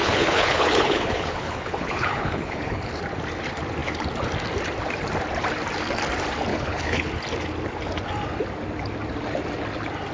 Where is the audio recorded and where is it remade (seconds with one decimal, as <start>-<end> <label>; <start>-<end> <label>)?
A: 0.0-2.9 remade; 2.9-6.5 recorded; 6.5-7.1 remade; 7.1-10.1 recorded